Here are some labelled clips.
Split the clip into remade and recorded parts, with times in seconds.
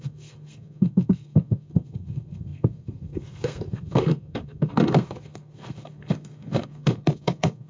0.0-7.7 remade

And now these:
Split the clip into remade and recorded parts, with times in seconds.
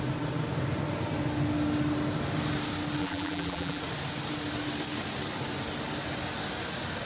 0.0-3.0 recorded; 3.0-3.8 remade; 3.8-7.1 recorded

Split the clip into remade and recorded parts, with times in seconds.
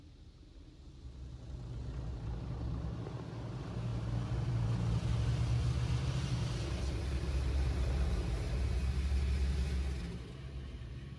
0.0-3.9 recorded; 3.9-4.5 remade; 4.5-11.2 recorded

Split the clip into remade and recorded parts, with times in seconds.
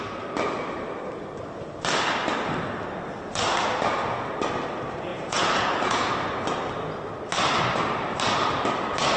0.0-5.1 recorded; 5.1-6.1 remade; 6.1-9.2 recorded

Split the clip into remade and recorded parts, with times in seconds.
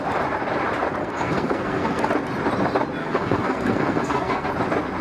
0.0-1.0 recorded; 1.0-2.1 remade; 2.1-3.0 recorded; 3.0-4.5 remade; 4.5-5.0 recorded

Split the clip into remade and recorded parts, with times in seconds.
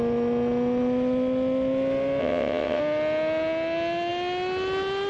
0.0-2.2 recorded; 2.2-2.8 remade; 2.8-5.1 recorded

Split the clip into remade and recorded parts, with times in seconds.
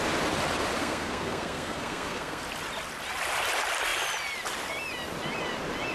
0.0-0.8 recorded; 0.8-2.4 remade; 2.4-5.9 recorded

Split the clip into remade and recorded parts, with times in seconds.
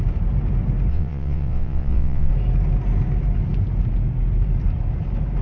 0.0-0.9 recorded; 0.9-2.3 remade; 2.3-5.4 recorded